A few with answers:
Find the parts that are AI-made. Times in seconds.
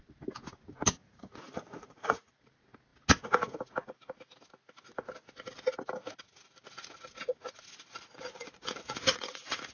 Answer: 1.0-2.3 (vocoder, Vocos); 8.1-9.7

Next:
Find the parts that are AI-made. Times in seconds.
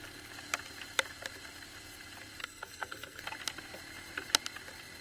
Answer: 2.4-3.2 (codec, SNAC)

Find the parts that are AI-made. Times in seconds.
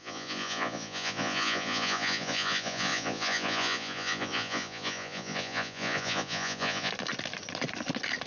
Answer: 0.0-6.9 (vocoder, Vocos)